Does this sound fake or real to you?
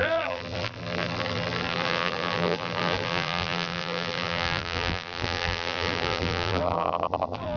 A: fake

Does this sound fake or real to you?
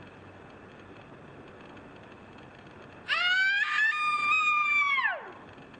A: real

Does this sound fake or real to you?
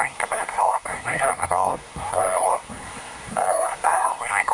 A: fake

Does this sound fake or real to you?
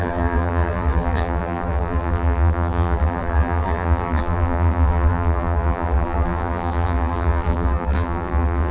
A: fake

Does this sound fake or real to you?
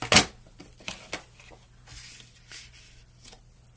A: real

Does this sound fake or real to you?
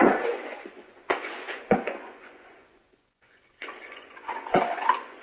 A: fake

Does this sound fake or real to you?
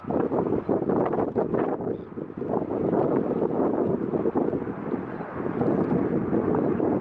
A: real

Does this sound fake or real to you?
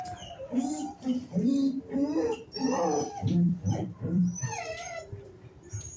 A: fake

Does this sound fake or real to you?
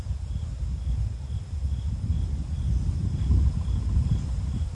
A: real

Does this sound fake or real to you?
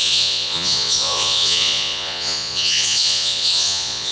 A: fake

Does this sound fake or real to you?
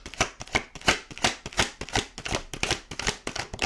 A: real